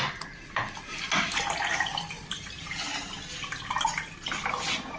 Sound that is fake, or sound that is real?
real